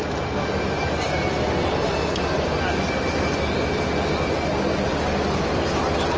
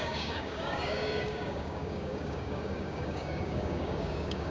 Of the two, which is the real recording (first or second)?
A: first